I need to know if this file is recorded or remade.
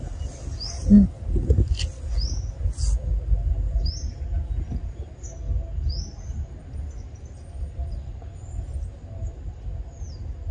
recorded